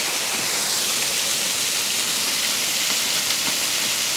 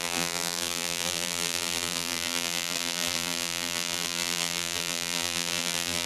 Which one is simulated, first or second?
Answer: second